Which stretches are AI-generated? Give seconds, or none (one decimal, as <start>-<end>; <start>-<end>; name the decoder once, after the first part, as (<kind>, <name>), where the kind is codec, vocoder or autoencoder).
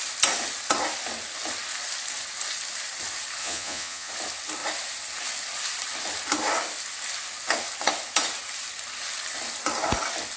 3.4-4.1 (vocoder, Vocos)